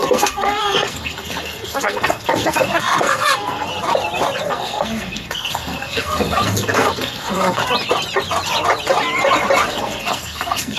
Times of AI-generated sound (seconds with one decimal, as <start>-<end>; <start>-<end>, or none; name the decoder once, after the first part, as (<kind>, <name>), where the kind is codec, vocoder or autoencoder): 0.0-3.7 (codec, SNAC); 4.5-7.6; 9.7-10.8